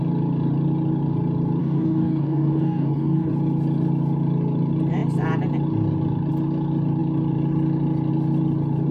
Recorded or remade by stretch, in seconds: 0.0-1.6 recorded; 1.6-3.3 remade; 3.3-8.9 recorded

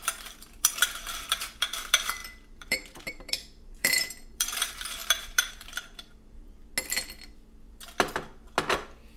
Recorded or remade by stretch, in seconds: 0.0-6.6 remade; 6.6-9.2 recorded

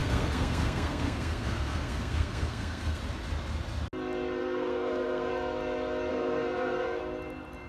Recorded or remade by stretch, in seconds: 0.0-3.0 remade; 3.0-4.4 recorded; 4.4-5.3 remade; 5.3-6.1 recorded; 6.1-7.0 remade; 7.0-7.7 recorded

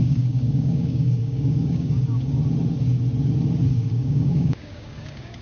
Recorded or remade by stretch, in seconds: 0.0-2.4 remade; 2.4-3.7 recorded; 3.7-5.4 remade

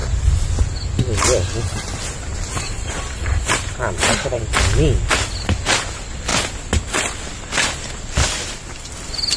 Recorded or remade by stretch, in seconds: 0.0-0.5 remade; 0.5-2.3 recorded; 2.3-4.4 remade; 4.4-9.4 recorded